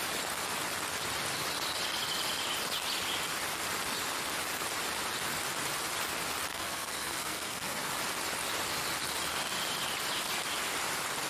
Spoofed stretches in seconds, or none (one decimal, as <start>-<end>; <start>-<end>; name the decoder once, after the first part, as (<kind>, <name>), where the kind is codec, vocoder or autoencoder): 6.5-7.9 (codec, SNAC)